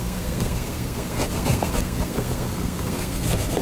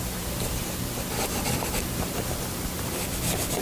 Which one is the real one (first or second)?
second